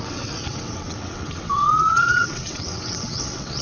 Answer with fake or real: fake